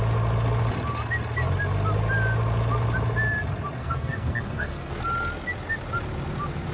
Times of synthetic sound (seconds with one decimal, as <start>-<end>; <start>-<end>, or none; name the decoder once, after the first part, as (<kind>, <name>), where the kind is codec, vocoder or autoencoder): 3.8-4.9 (codec, SNAC)